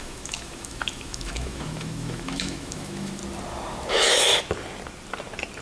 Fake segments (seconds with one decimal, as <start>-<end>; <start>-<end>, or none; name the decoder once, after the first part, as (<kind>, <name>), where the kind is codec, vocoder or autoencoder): 0.0-3.2 (autoencoder, DAC-VAE); 3.9-4.3